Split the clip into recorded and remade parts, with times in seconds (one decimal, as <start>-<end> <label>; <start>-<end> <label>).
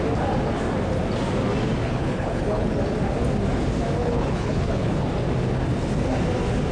0.0-1.8 recorded; 1.8-2.8 remade; 2.8-4.0 recorded; 4.0-5.0 remade; 5.0-6.7 recorded